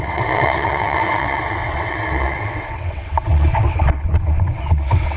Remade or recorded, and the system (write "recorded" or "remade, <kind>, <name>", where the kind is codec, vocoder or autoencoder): remade, vocoder, WaveNeXt